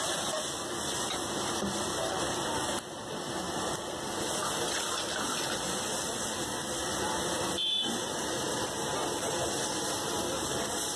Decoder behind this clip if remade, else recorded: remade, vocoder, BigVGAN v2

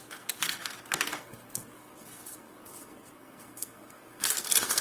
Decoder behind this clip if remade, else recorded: remade, codec, SNAC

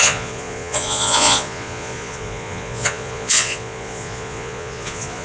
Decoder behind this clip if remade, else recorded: remade, vocoder, Vocos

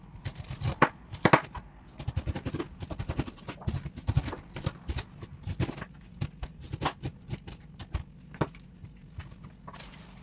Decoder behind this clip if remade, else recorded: recorded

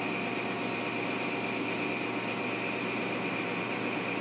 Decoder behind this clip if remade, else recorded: recorded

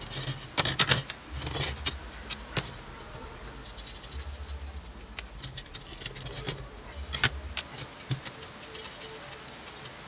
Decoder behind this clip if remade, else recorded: recorded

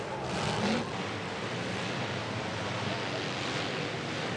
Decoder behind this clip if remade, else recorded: recorded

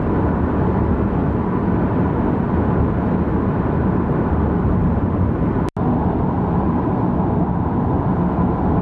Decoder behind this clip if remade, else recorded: recorded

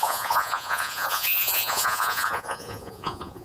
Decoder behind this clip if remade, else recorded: remade, vocoder, Vocos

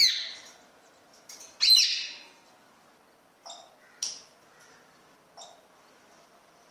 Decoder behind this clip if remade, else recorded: recorded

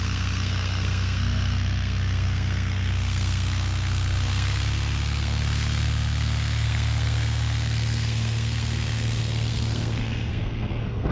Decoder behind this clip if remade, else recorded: remade, codec, SNAC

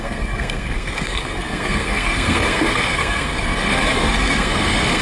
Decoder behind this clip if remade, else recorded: remade, codec, SNAC